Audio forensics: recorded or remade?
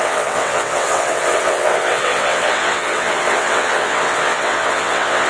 remade